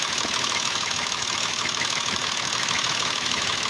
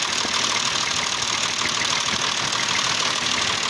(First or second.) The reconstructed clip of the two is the first